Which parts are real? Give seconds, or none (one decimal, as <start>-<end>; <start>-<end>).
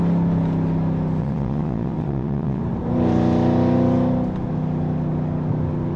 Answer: 0.0-1.2; 2.6-6.0